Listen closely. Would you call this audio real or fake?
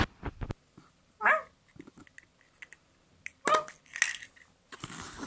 real